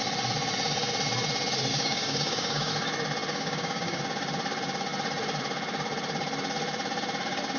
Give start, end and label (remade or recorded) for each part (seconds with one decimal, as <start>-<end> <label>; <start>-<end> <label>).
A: 0.0-1.7 recorded; 1.7-2.7 remade; 2.7-3.3 recorded; 3.3-4.0 remade; 4.0-7.6 recorded